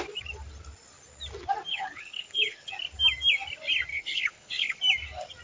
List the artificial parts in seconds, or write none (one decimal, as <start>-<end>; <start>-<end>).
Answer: 1.7-2.7; 3.9-4.8